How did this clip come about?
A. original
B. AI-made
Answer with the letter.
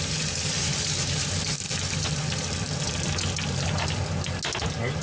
A